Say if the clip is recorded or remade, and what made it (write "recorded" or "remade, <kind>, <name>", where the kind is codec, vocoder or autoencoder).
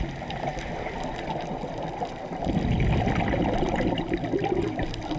recorded